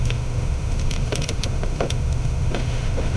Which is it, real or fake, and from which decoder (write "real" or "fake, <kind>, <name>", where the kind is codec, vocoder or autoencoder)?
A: fake, autoencoder, DAC-VAE